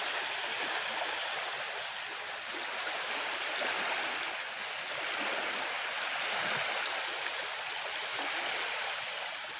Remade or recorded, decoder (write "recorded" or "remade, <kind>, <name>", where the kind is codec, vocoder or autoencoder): recorded